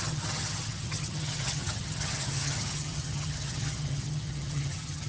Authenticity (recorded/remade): remade